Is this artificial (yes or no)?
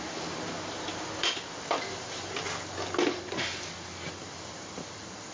no